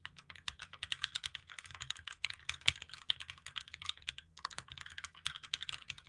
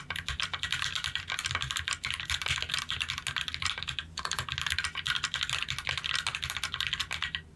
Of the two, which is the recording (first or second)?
second